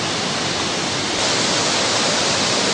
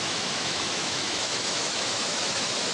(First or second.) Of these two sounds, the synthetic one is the second